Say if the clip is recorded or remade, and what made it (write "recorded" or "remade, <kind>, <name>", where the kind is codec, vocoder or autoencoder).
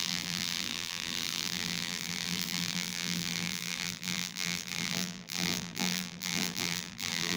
remade, vocoder, BigVGAN v2